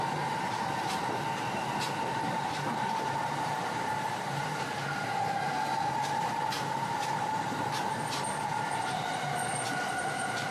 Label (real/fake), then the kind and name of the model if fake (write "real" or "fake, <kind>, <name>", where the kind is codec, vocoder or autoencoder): fake, vocoder, BigVGAN v2